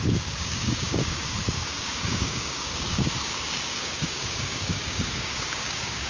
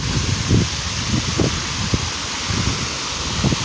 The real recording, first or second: second